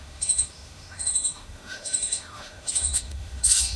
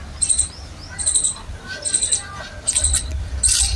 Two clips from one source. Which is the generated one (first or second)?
first